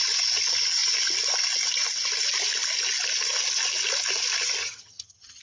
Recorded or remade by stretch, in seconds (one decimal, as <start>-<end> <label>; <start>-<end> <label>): 0.0-4.6 recorded; 4.6-5.4 remade